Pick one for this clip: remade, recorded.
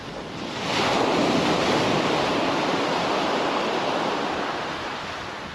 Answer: recorded